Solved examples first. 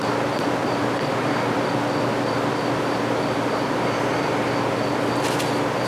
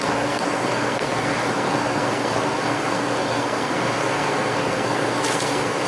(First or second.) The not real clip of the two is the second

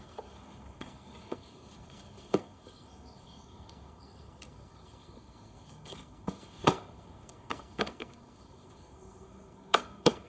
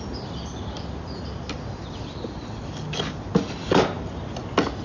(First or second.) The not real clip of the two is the first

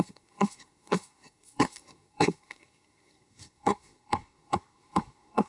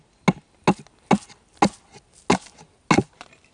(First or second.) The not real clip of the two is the first